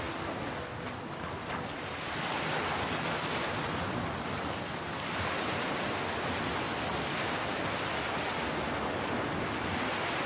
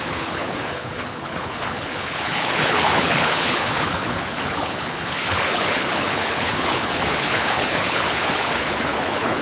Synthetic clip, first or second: second